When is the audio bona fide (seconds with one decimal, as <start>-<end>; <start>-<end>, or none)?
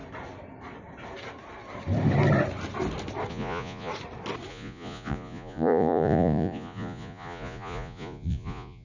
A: 0.0-3.3; 3.9-4.5